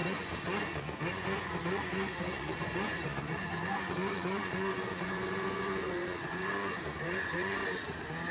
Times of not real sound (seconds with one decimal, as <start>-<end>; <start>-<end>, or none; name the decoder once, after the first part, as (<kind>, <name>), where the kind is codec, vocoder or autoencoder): 0.0-7.6 (vocoder, Vocos)